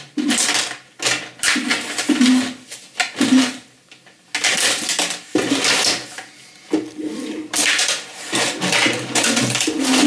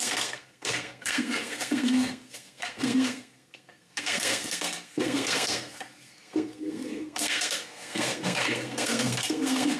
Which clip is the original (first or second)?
first